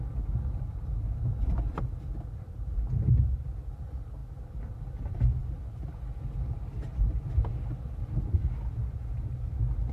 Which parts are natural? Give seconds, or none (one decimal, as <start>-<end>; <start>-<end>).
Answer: 0.0-9.9